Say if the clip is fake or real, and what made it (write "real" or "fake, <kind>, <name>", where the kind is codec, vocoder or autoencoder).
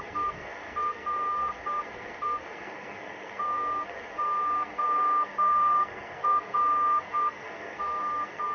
fake, codec, SNAC